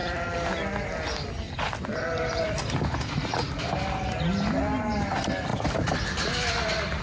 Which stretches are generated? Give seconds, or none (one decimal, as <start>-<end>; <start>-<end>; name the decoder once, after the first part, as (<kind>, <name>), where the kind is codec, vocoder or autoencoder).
none